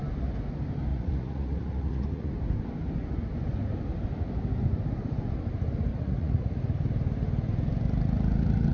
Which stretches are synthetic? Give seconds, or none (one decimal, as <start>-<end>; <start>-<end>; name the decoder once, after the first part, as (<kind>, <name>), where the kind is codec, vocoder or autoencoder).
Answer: 0.9-2.3 (vocoder, Vocos); 5.9-6.6